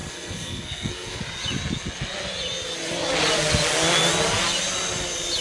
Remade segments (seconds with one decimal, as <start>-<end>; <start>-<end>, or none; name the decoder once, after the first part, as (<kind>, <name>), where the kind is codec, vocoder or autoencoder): 0.0-1.2 (codec, SNAC)